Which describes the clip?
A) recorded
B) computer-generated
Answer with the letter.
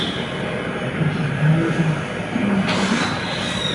A